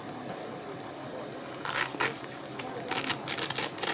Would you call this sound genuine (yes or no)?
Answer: yes